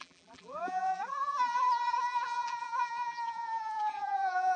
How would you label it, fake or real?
fake